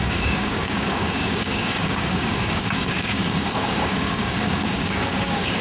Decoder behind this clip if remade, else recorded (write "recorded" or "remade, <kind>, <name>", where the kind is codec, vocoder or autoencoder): remade, codec, DAC